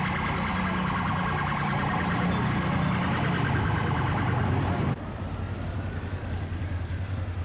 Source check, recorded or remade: recorded